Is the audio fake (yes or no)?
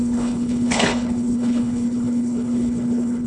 yes